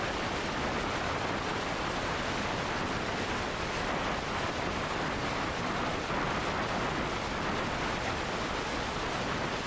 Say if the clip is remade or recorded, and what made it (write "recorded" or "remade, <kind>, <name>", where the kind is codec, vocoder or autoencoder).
recorded